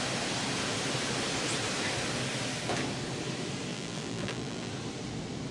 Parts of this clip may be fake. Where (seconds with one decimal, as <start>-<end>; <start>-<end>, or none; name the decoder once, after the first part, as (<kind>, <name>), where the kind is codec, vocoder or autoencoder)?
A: 3.7-4.7 (vocoder, BigVGAN v2)